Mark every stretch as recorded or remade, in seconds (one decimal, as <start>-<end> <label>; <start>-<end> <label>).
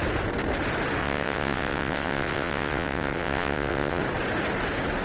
0.0-1.0 recorded; 1.0-4.0 remade; 4.0-5.0 recorded